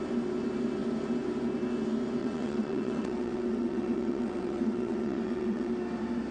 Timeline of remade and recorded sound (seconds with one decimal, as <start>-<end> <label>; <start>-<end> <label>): 0.0-2.2 recorded; 2.2-5.7 remade; 5.7-6.3 recorded